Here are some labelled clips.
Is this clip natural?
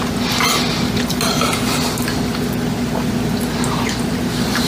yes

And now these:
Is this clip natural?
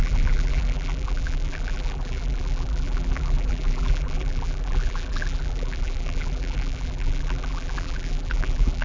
no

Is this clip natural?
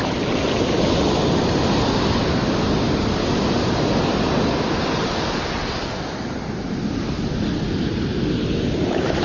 yes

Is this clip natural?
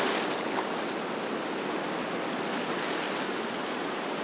yes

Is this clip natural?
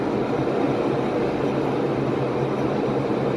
yes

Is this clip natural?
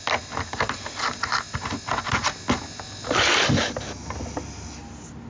yes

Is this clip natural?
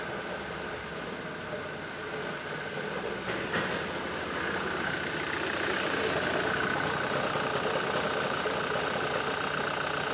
yes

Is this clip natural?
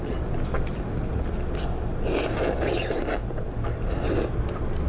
yes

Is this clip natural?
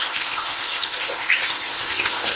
no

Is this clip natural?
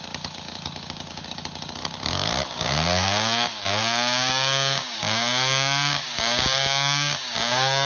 no